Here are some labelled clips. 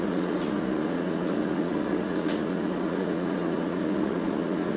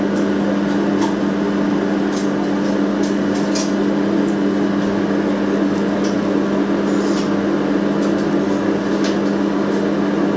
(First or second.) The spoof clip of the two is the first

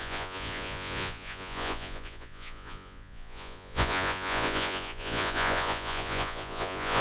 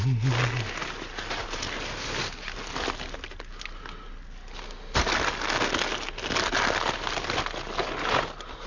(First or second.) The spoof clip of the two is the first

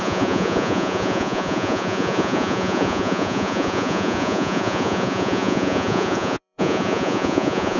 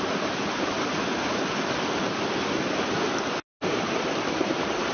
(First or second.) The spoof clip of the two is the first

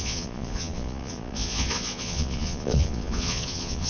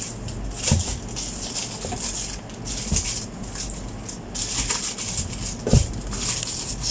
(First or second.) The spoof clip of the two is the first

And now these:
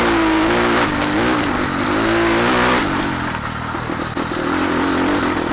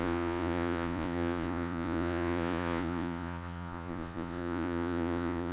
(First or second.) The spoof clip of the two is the second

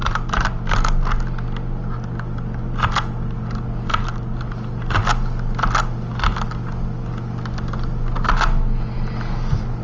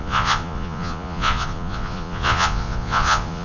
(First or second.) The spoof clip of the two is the second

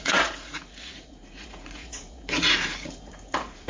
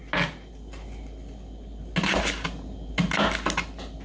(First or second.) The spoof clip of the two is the first